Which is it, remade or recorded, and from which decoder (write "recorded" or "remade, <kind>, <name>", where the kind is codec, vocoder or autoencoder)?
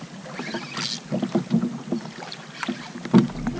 recorded